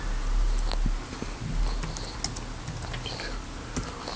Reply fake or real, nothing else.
real